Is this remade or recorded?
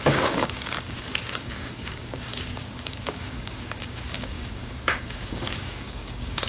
remade